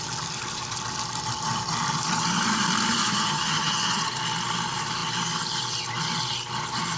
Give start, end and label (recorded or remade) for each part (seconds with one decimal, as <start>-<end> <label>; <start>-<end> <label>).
0.0-3.0 recorded; 3.0-4.0 remade; 4.0-7.0 recorded